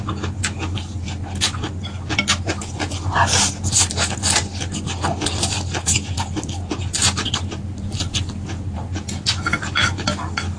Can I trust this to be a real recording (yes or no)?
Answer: yes